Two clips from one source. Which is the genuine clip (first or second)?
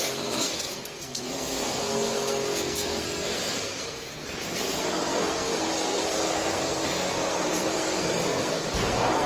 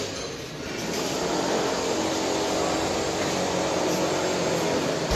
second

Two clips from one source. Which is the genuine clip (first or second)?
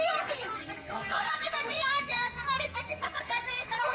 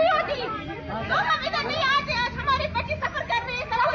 second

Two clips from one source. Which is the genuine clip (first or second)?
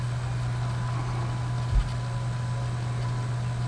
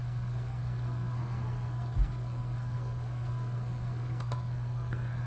first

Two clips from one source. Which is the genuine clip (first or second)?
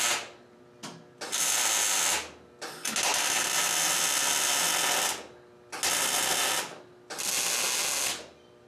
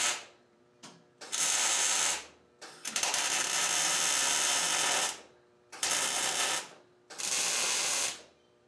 first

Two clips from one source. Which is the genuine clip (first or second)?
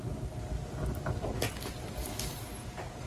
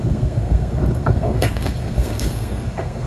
first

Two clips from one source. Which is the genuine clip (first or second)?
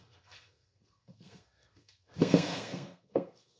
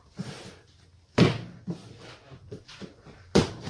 second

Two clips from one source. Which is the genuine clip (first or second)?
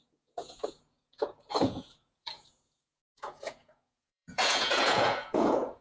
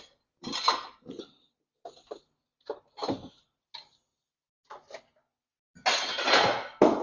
second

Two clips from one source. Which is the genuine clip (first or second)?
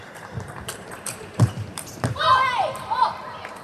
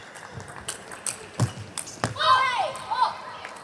second